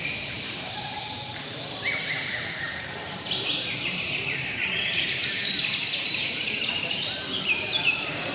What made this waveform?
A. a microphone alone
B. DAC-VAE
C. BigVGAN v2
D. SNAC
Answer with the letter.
C